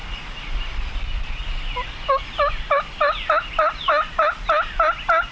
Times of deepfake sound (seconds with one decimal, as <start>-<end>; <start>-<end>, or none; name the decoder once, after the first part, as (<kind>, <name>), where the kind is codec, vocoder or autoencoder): none